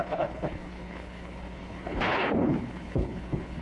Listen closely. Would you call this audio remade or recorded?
remade